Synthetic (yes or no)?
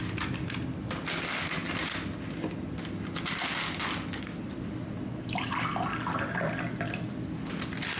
no